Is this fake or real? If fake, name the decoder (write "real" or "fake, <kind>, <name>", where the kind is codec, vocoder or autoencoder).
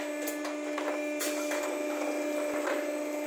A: real